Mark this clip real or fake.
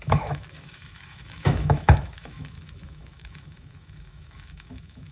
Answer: fake